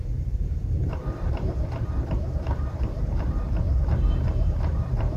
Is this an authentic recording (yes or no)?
no